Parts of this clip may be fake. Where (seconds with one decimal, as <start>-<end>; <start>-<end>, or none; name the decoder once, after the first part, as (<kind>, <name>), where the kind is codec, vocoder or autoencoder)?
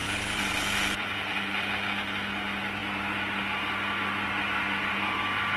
0.0-1.7 (vocoder, BigVGAN v2)